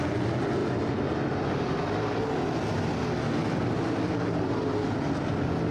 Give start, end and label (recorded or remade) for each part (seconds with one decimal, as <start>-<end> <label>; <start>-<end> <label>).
0.0-3.4 recorded; 3.4-4.1 remade; 4.1-5.7 recorded